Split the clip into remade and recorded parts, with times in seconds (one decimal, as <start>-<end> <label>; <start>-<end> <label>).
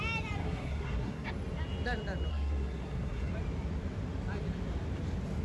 0.0-0.4 recorded; 0.4-1.3 remade; 1.3-2.3 recorded; 2.3-3.3 remade; 3.3-5.4 recorded